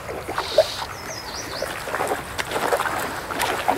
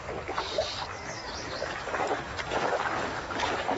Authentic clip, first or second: first